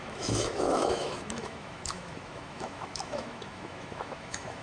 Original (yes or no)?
no